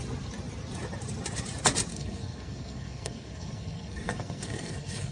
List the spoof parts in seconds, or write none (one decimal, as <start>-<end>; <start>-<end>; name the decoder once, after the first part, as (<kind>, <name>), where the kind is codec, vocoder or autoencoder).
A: 1.9-5.1 (codec, SNAC)